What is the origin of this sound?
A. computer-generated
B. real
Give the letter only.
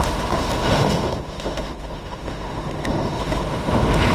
A